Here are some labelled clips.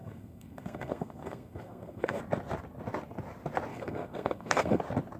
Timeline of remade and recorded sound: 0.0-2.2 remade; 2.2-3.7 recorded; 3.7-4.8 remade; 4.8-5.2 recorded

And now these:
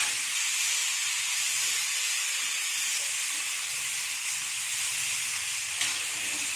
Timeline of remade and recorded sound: 0.0-6.6 recorded

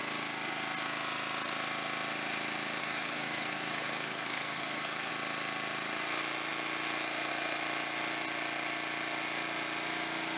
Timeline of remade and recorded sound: 0.0-2.8 recorded; 2.8-5.1 remade; 5.1-10.4 recorded

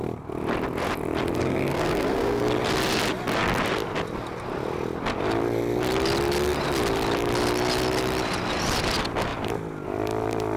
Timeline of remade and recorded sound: 0.0-1.7 recorded; 1.7-2.4 remade; 2.4-10.6 recorded

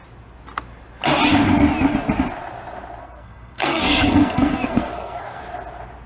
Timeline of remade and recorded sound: 0.0-3.0 recorded; 3.0-5.4 remade; 5.4-6.1 recorded

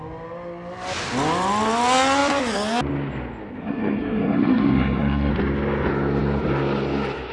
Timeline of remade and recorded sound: 0.0-3.6 recorded; 3.6-5.3 remade; 5.3-7.3 recorded

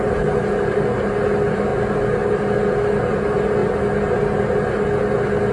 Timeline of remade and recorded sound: 0.0-5.5 recorded

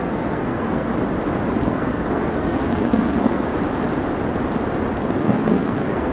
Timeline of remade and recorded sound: 0.0-0.9 remade; 0.9-1.6 recorded; 1.6-3.5 remade; 3.5-5.0 recorded; 5.0-6.1 remade